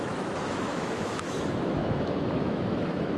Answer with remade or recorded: remade